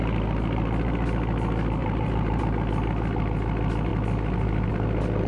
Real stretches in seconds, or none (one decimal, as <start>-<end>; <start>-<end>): 0.0-1.8; 2.4-5.3

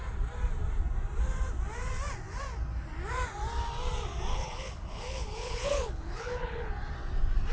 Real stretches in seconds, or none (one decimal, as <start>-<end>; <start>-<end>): 0.0-4.3; 6.7-7.5